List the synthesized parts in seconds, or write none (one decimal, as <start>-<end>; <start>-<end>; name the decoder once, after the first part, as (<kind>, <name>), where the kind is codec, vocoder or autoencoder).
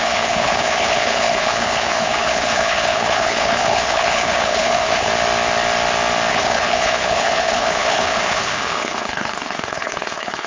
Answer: 0.0-5.1 (codec, HILCodec); 6.3-10.5